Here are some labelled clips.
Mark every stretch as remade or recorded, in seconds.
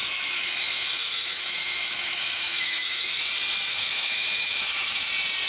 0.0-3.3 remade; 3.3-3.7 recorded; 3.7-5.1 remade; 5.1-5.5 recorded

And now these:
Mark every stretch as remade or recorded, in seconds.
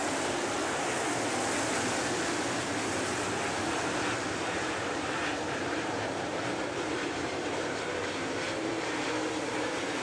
0.0-3.7 recorded; 3.7-10.0 remade